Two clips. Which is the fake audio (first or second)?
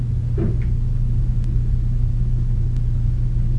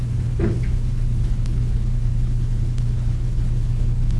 second